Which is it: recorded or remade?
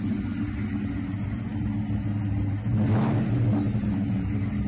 recorded